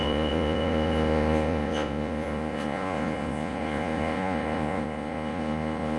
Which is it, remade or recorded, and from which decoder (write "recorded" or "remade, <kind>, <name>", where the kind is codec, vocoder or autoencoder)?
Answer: remade, vocoder, Vocos